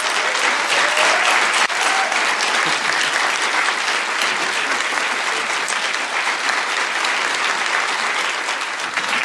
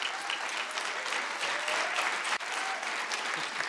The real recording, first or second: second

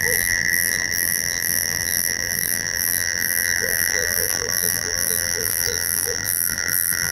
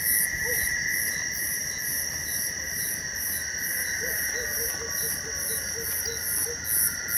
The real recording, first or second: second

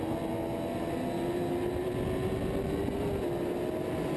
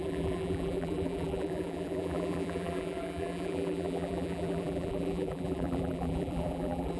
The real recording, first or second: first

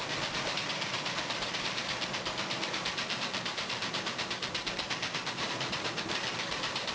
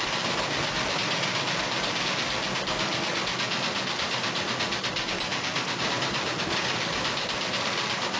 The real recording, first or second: second